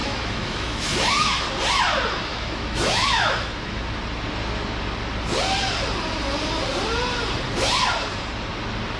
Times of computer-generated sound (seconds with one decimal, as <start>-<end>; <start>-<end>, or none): 0.0-1.4; 2.3-3.8